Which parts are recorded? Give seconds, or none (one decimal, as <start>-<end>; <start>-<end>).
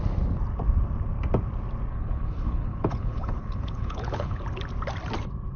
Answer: 0.0-1.9; 4.4-5.6